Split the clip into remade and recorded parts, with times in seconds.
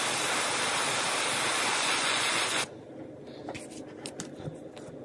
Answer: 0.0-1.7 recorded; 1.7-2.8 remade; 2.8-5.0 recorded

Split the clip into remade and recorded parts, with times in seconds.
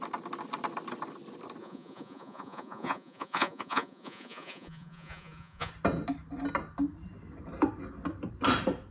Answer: 0.0-1.6 recorded; 1.6-5.7 remade; 5.7-8.9 recorded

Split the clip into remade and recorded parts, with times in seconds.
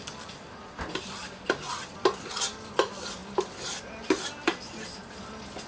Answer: 0.0-5.7 recorded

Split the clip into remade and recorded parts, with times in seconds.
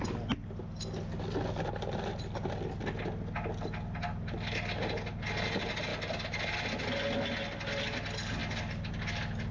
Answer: 0.0-9.5 recorded